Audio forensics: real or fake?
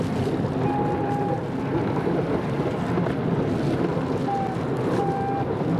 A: real